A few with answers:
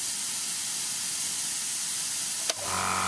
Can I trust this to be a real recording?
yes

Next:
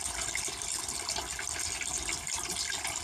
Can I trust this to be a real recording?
yes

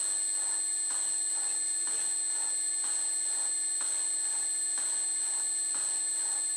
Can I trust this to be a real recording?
yes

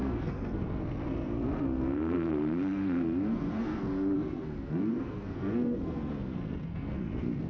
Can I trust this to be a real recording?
no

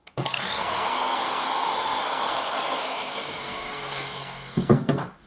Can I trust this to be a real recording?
no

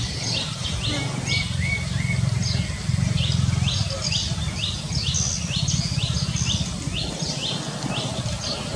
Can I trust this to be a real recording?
yes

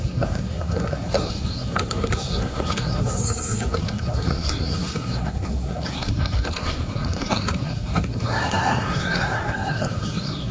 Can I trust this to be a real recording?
no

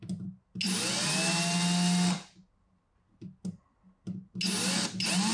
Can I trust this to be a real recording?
yes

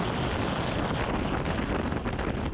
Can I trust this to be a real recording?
yes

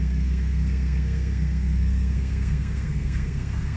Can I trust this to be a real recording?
no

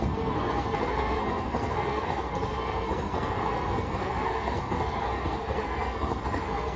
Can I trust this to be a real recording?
no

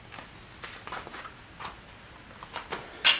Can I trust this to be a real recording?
yes